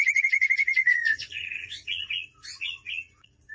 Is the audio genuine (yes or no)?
no